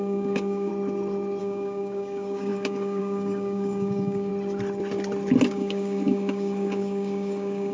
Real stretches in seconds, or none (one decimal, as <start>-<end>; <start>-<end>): 0.7-1.4; 4.3-5.5